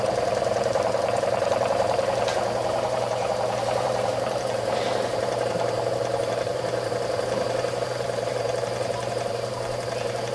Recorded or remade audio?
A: remade